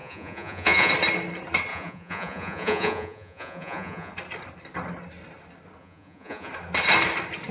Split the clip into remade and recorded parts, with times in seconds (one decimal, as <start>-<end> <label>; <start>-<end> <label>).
0.0-0.9 remade; 0.9-1.7 recorded; 1.7-4.1 remade; 4.1-5.8 recorded; 5.8-6.5 remade; 6.5-7.5 recorded